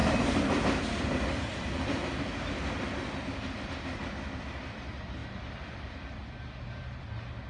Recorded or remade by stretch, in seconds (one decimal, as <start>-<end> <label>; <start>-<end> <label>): 0.0-7.5 recorded